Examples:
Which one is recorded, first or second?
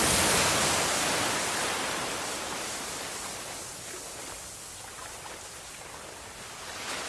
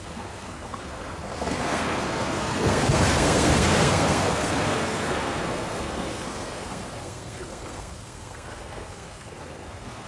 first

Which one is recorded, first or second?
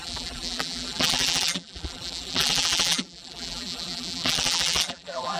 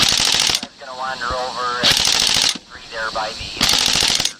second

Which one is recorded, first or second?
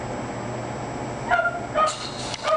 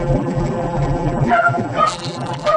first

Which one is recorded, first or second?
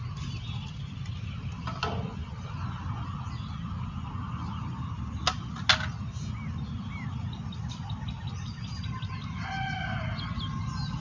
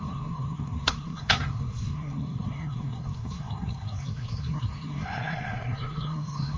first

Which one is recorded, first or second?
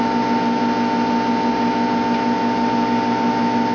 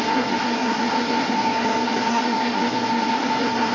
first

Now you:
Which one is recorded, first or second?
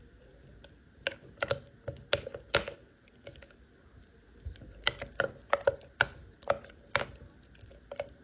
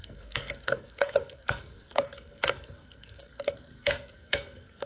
first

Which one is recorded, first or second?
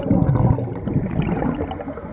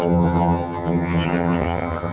first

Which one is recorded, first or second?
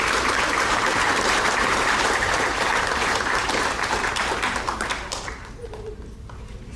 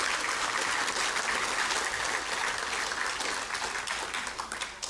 second